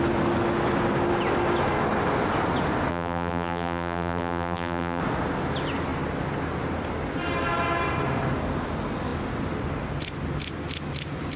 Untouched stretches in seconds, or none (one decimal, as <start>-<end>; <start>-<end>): 0.0-2.9; 5.0-11.4